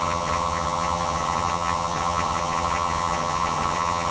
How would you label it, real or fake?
fake